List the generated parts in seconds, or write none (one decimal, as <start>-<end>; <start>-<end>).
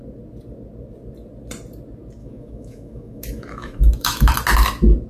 2.2-4.3